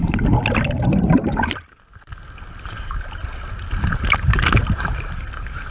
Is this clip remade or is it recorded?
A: recorded